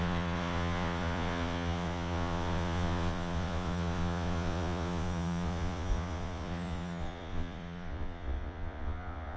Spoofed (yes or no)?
yes